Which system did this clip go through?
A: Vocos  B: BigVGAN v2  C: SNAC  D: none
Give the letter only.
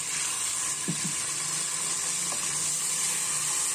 D